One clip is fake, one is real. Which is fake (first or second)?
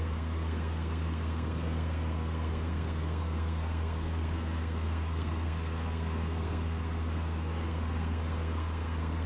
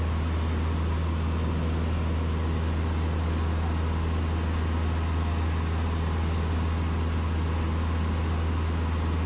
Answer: first